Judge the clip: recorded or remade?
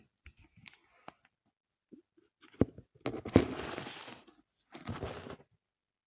recorded